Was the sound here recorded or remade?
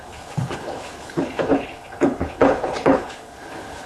remade